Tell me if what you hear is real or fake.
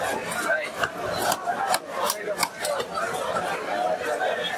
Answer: real